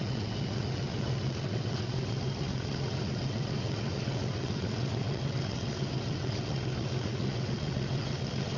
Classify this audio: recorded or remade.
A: remade